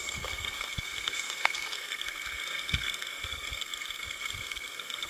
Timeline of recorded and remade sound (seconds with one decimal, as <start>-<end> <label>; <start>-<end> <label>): 0.0-5.1 remade